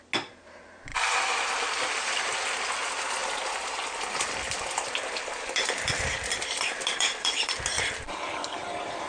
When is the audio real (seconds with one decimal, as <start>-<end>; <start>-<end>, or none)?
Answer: 0.0-0.9; 1.7-3.2; 7.5-9.1